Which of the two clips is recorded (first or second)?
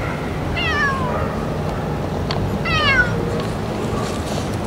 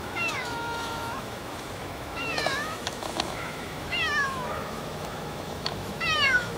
first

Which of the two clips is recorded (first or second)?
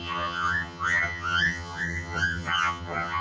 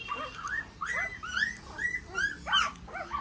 second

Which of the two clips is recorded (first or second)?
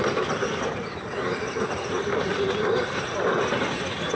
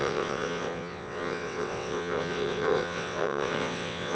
first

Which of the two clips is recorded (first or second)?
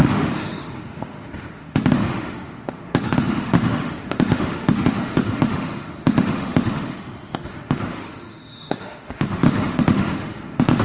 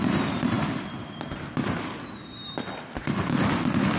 second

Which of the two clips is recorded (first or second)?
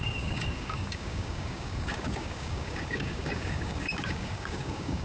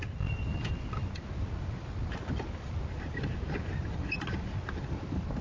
second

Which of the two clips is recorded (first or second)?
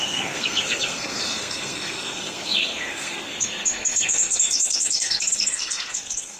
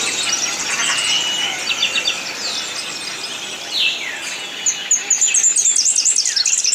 second